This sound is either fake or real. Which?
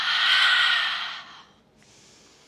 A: real